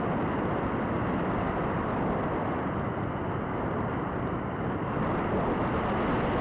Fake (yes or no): no